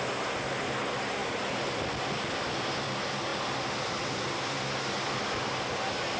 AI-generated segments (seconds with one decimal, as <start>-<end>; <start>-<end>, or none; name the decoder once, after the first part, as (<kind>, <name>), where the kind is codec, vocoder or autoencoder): none